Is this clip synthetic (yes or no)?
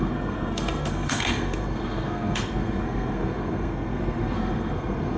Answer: yes